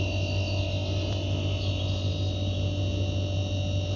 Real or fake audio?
real